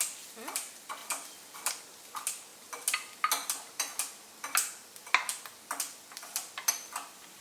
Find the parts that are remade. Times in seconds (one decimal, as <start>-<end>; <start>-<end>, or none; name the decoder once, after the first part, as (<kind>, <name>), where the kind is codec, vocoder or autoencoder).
none